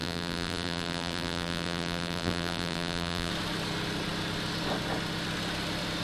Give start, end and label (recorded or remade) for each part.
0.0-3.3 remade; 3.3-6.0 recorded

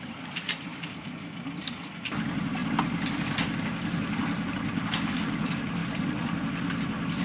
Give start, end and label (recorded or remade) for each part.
0.0-7.2 recorded

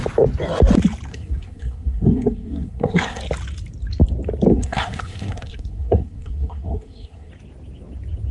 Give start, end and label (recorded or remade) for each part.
0.0-1.1 recorded; 1.1-3.2 remade; 3.2-4.5 recorded; 4.5-7.3 remade; 7.3-8.3 recorded

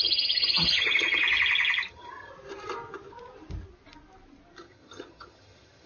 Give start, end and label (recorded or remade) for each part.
0.0-1.2 remade; 1.2-1.9 recorded; 1.9-2.3 remade; 2.3-4.6 recorded; 4.6-5.9 remade